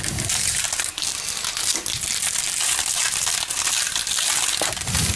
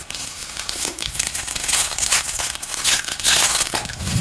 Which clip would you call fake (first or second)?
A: second